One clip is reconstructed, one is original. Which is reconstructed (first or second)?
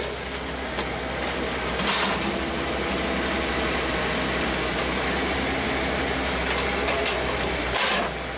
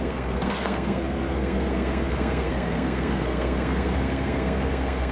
second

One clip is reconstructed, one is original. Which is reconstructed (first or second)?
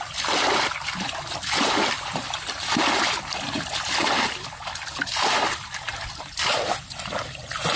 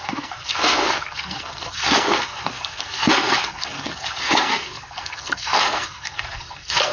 second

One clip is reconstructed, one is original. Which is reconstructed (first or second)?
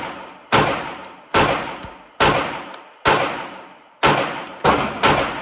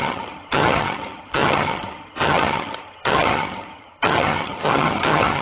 second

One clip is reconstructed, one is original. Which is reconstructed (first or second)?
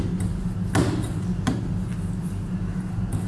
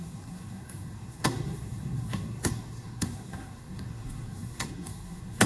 second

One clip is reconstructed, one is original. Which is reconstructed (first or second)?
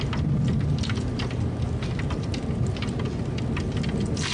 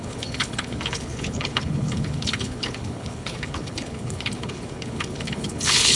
second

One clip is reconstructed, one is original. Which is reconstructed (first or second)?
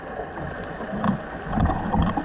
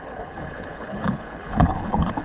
second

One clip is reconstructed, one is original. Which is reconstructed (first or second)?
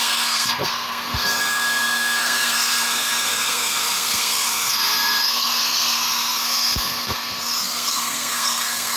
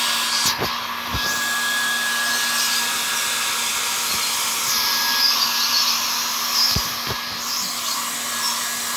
first